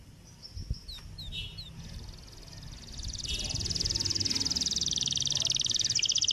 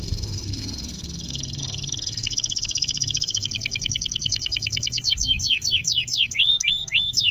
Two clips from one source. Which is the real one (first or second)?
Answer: first